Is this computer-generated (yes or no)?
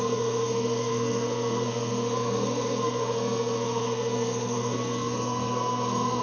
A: yes